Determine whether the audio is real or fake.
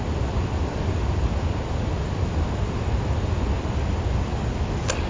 real